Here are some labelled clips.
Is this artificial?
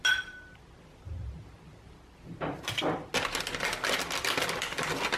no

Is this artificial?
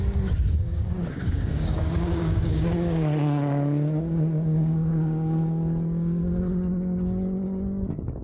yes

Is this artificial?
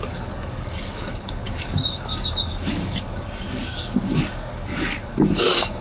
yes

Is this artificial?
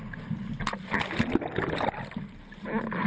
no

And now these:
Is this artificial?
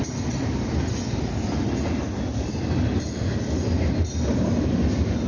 no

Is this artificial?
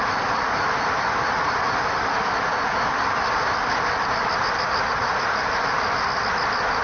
no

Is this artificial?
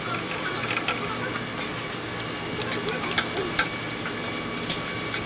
no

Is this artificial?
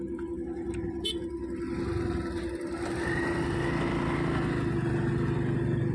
no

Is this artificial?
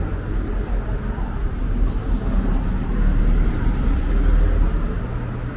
no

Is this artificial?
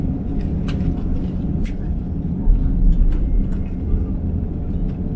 no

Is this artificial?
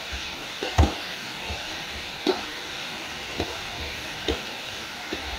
yes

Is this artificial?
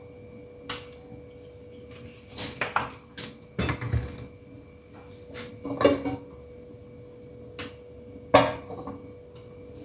no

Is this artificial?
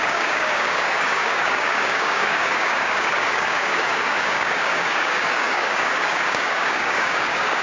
yes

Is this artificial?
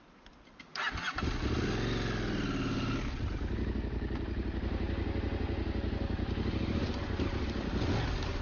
no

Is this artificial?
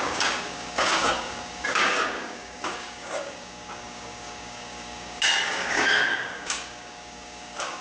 yes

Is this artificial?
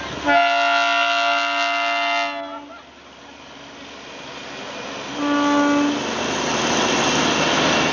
no